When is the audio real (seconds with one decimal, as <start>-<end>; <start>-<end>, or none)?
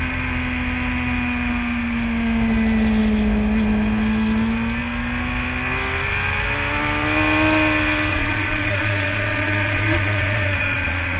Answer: 0.0-8.1